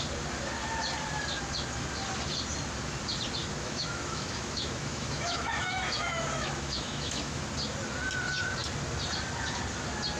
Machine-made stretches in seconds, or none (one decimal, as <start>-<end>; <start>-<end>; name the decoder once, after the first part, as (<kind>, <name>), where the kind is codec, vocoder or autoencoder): 3.4-7.4 (autoencoder, DAC-VAE)